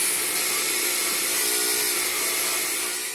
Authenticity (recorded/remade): recorded